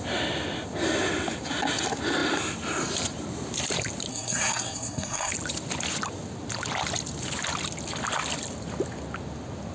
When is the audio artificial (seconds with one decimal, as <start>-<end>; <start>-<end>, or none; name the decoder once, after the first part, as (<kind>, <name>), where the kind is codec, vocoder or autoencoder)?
4.1-5.3 (codec, SNAC)